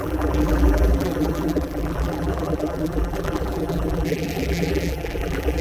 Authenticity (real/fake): fake